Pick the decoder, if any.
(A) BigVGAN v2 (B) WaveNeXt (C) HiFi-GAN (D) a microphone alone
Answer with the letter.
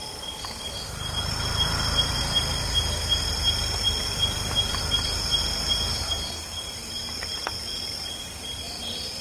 D